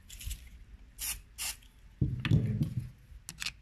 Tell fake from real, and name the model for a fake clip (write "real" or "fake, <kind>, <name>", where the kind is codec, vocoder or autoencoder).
real